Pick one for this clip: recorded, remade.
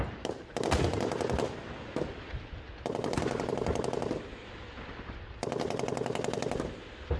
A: recorded